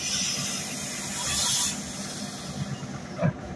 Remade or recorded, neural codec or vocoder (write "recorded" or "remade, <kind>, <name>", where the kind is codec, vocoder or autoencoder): recorded